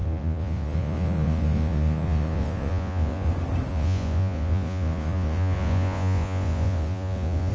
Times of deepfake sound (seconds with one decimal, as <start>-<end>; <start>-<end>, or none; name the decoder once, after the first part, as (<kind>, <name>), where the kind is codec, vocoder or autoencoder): 0.0-3.3 (vocoder, Vocos); 3.7-7.5